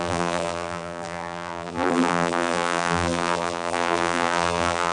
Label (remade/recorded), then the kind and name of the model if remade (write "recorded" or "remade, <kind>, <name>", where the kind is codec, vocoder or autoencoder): remade, vocoder, BigVGAN v2